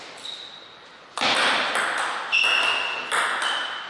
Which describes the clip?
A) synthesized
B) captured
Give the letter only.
B